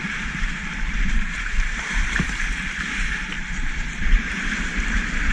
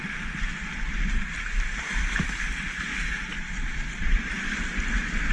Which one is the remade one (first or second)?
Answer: first